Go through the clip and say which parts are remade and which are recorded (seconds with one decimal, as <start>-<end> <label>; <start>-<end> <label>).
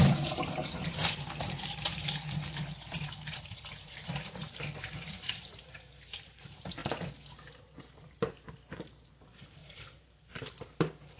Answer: 0.0-6.8 remade; 6.8-7.6 recorded; 7.6-11.2 remade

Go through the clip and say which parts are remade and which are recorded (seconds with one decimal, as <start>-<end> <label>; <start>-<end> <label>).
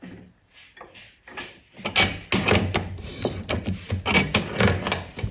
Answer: 0.0-5.3 recorded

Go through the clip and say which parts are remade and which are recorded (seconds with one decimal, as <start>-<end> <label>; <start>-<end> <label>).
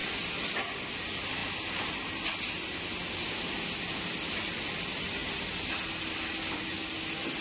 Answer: 0.0-7.4 recorded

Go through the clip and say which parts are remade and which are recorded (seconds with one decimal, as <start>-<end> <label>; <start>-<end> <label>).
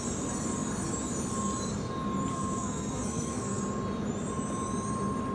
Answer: 0.0-2.3 recorded; 2.3-3.6 remade; 3.6-5.3 recorded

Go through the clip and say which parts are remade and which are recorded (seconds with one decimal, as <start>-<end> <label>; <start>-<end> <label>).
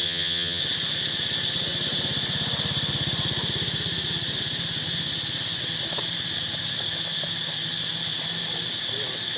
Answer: 0.0-0.6 remade; 0.6-9.4 recorded